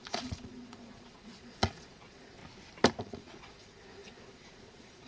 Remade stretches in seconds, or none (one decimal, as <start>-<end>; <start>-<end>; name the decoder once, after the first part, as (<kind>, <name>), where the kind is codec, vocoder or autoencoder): 0.0-2.4 (vocoder, Vocos); 3.0-5.1

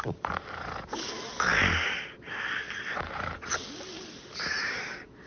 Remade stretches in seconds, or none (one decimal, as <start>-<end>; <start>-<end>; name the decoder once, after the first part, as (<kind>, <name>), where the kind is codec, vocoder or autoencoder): none